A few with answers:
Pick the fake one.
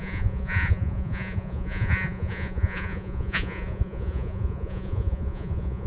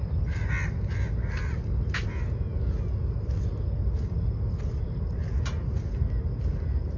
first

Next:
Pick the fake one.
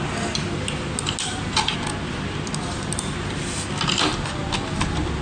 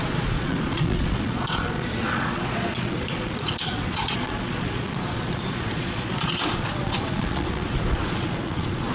second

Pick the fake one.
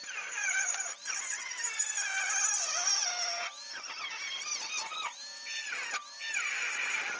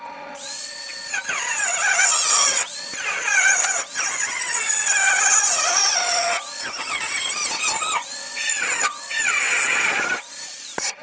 second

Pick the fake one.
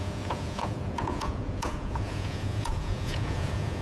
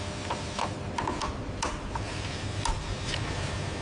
first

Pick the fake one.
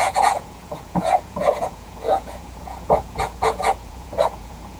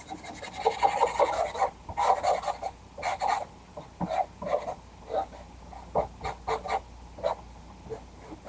first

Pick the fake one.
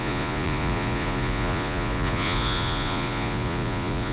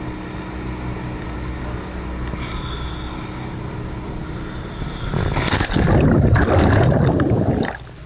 first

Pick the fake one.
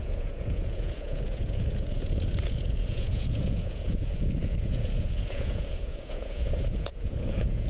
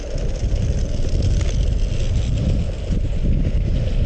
first